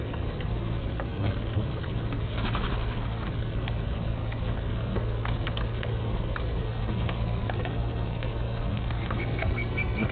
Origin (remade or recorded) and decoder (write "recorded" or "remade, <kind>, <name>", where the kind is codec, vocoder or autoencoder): remade, codec, SNAC